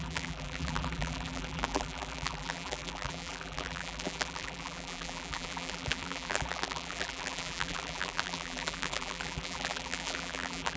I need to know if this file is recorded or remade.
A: remade